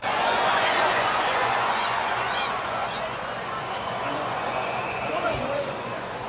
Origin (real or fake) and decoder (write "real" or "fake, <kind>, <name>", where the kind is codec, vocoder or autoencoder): fake, vocoder, Vocos